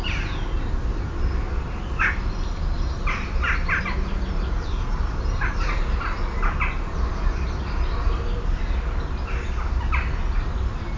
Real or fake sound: real